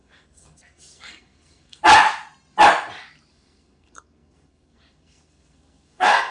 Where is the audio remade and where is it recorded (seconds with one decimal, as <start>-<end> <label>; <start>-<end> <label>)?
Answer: 0.0-1.8 remade; 1.8-3.3 recorded; 3.3-6.3 remade